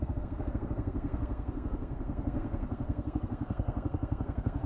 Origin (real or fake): fake